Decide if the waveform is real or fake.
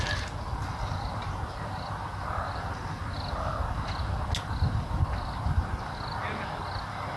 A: real